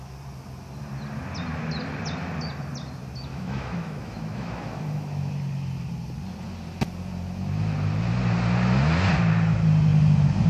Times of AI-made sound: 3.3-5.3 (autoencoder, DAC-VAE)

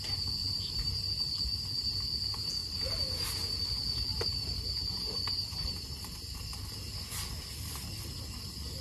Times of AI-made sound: 0.4-1.0 (vocoder, BigVGAN v2); 2.6-3.3; 4.1-6.6

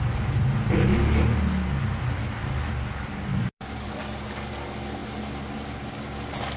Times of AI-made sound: 2.2-2.7 (codec, DAC); 3.3-4.0

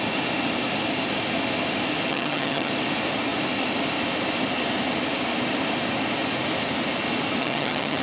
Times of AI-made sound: 2.1-2.7 (vocoder, HiFi-GAN); 7.4-8.0

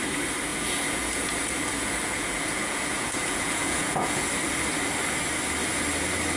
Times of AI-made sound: 0.5-4.3 (vocoder, Vocos)

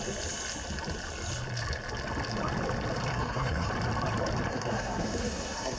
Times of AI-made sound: 3.1-3.7 (codec, SNAC); 4.5-5.8